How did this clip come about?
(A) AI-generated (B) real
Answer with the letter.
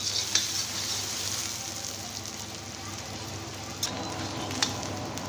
B